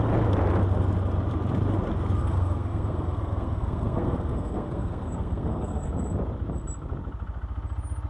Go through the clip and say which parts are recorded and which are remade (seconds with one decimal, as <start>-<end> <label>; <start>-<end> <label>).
0.0-2.2 recorded; 2.2-5.9 remade; 5.9-8.1 recorded